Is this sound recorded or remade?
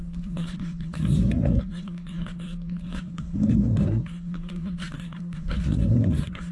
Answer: remade